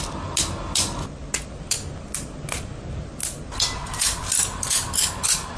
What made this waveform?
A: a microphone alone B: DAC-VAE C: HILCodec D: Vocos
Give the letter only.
A